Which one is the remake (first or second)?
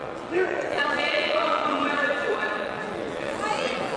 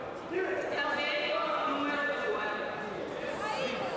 first